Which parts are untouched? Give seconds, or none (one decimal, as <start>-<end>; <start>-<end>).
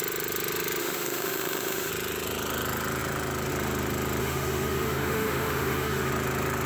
0.0-0.8; 1.9-4.2; 6.1-6.7